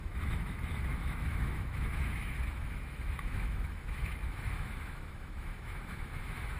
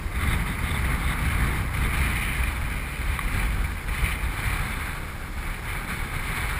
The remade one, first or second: first